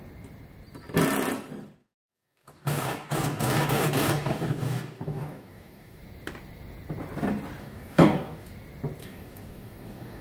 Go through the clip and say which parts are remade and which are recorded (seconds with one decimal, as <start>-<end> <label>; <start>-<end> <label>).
0.0-1.8 recorded; 1.8-6.0 remade; 6.0-7.6 recorded; 7.6-8.5 remade; 8.5-9.0 recorded; 9.0-10.2 remade